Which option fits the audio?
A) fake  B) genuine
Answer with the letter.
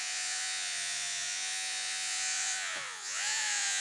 A